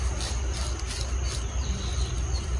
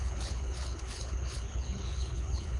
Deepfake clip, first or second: second